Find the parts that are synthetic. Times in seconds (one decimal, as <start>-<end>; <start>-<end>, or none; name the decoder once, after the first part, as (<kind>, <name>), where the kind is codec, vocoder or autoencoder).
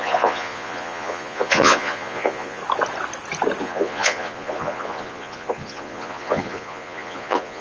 0.0-2.6 (vocoder, Vocos); 3.6-7.6